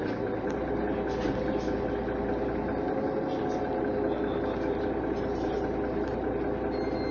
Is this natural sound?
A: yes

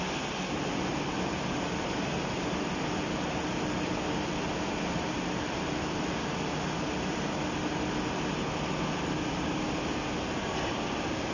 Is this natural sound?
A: yes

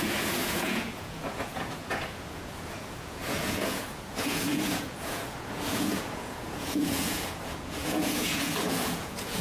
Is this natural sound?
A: no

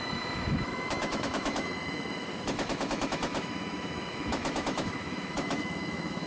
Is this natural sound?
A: no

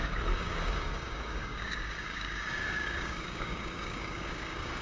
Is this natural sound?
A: no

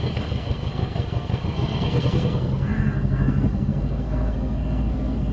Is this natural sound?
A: no